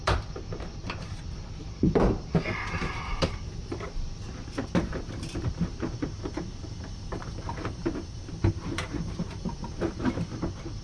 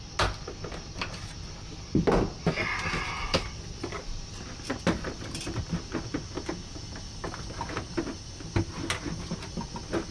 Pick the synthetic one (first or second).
first